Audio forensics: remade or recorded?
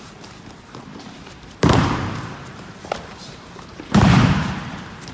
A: remade